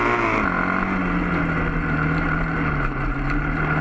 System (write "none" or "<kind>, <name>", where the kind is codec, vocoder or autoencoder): none